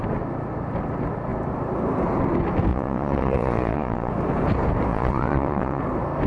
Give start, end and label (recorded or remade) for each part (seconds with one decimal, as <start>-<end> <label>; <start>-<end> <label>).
0.0-2.7 recorded; 2.7-4.1 remade; 4.1-4.9 recorded; 4.9-5.8 remade; 5.8-6.3 recorded